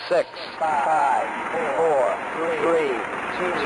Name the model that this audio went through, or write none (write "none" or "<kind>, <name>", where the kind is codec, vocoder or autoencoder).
vocoder, Vocos